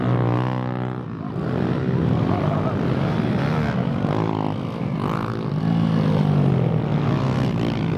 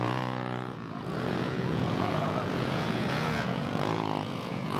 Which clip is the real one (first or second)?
first